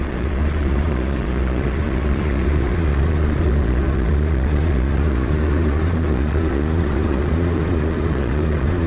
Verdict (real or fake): fake